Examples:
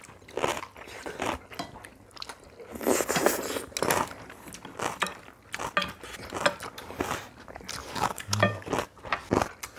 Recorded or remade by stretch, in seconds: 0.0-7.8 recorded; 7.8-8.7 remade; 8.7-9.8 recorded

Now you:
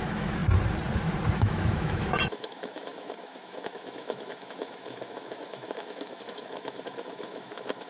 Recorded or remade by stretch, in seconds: 0.0-0.4 remade; 0.4-1.3 recorded; 1.3-7.9 remade

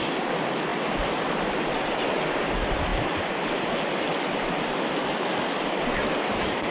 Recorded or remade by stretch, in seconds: 0.0-0.7 recorded; 0.7-1.4 remade; 1.4-6.7 recorded

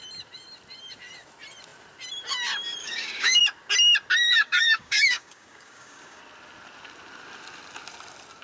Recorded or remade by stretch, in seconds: 0.0-2.8 recorded; 2.8-3.4 remade; 3.4-4.3 recorded; 4.3-6.2 remade; 6.2-8.4 recorded

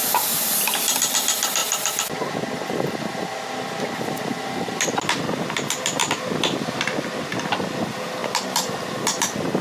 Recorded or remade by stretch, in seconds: 0.0-9.6 recorded

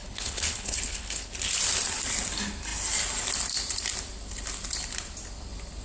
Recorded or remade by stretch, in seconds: 0.0-1.3 remade; 1.3-5.8 recorded

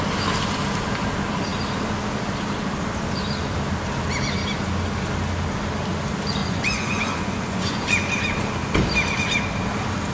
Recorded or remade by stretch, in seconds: 0.0-6.4 recorded; 6.4-8.0 remade; 8.0-10.1 recorded

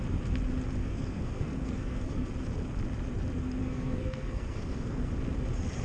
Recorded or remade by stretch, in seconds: 0.0-0.8 recorded; 0.8-2.3 remade; 2.3-3.6 recorded; 3.6-5.1 remade; 5.1-5.8 recorded